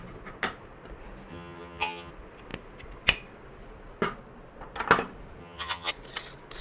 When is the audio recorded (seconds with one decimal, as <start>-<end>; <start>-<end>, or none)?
0.0-1.3; 2.1-5.4; 5.9-6.6